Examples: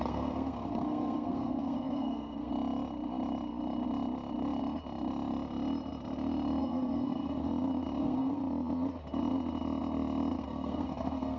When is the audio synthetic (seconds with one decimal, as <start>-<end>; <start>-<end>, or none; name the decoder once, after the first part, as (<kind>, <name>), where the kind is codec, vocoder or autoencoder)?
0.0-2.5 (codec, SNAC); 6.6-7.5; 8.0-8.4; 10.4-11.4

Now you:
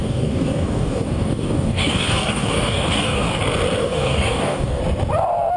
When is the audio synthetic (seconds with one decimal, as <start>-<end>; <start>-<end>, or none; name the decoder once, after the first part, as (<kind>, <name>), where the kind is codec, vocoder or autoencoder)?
0.0-3.4 (codec, DAC); 3.8-4.8

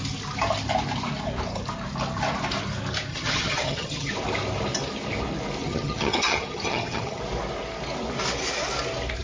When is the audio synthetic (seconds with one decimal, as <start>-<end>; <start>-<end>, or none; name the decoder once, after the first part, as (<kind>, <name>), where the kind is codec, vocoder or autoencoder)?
3.1-4.1 (vocoder, HiFi-GAN); 5.6-7.2

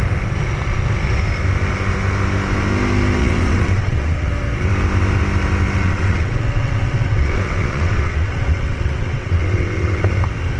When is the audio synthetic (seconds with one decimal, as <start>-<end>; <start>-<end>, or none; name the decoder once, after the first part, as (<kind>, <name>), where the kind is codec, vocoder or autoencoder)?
3.2-4.3 (vocoder, WaveNeXt); 5.8-10.1

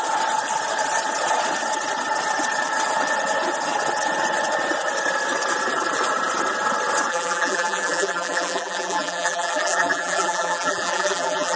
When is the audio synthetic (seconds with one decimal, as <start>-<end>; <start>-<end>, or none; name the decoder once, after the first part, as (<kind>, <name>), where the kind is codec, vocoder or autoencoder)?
7.1-11.6 (vocoder, BigVGAN v2)

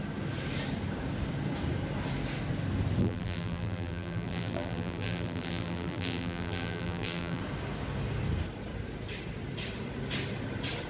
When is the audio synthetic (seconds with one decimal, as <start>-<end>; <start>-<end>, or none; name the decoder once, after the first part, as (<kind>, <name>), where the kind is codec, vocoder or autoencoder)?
3.0-7.4 (vocoder, BigVGAN v2)